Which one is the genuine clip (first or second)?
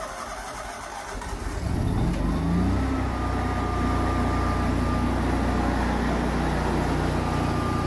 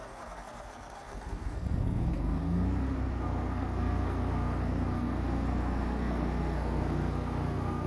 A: first